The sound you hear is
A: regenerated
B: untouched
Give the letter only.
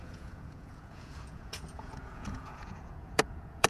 A